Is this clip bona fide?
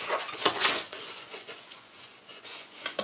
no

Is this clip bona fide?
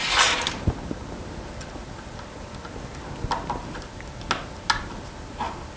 yes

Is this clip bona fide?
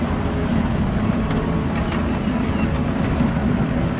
yes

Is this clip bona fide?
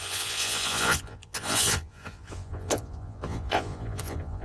no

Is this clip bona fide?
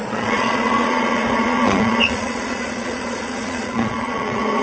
no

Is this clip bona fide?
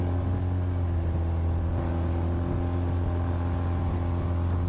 yes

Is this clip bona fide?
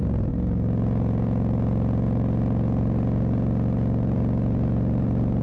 yes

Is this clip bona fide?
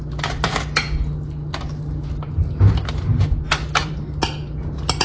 yes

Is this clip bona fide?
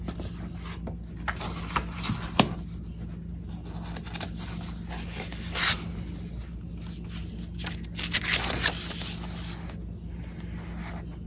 yes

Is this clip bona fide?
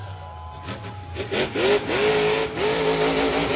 yes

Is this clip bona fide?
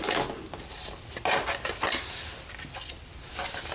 yes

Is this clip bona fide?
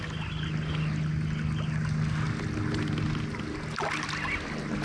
yes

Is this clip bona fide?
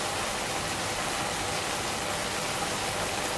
yes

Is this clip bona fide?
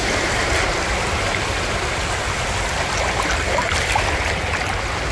yes